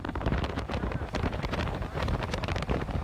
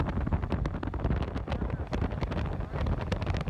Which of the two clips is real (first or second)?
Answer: second